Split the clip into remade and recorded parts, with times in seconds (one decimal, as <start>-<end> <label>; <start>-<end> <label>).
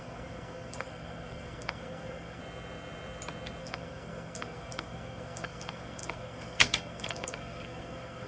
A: 0.0-2.4 remade; 2.4-3.6 recorded; 3.6-8.3 remade